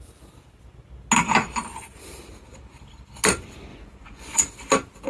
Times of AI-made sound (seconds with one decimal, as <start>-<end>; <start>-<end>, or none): 3.7-4.4